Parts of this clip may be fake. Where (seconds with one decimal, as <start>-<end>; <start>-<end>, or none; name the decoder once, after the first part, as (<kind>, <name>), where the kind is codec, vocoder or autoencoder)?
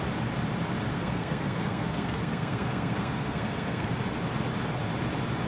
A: 0.9-3.9 (codec, SNAC)